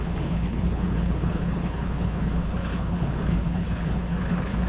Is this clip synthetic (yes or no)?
yes